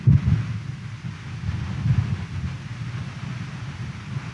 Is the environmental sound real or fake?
real